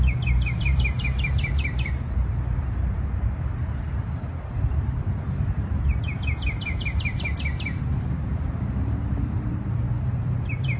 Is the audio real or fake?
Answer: fake